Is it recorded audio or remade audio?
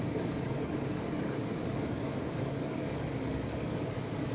remade